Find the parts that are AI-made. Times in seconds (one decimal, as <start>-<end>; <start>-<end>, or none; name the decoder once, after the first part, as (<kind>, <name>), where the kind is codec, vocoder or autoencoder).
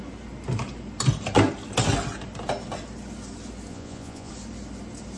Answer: 3.7-4.3 (vocoder, Vocos)